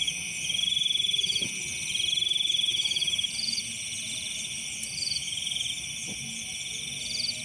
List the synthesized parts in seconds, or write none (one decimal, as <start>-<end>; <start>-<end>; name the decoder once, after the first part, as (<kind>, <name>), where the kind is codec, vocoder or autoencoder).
2.7-5.7 (vocoder, BigVGAN v2)